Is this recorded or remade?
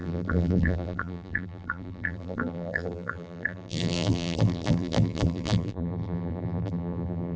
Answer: remade